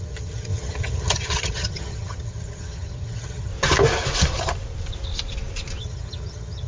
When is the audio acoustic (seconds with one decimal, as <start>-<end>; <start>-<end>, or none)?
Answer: 3.5-5.8